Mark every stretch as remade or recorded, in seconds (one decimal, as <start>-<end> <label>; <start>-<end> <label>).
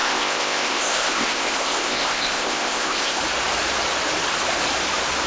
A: 0.0-3.2 remade; 3.2-5.3 recorded